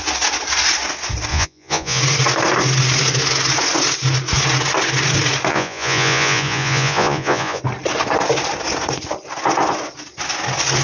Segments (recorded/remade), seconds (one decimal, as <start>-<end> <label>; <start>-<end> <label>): 0.0-1.3 recorded; 1.3-2.0 remade; 2.0-5.5 recorded; 5.5-7.6 remade; 7.6-10.8 recorded